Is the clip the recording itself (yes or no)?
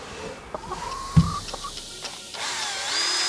yes